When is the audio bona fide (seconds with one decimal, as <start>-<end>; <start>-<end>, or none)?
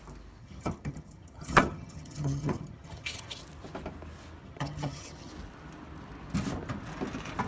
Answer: 0.0-0.4; 3.4-4.4; 5.3-7.5